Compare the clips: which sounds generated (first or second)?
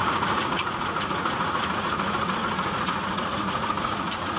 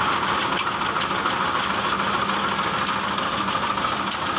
first